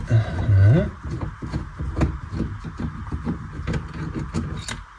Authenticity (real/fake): real